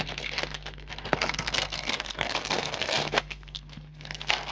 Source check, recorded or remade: remade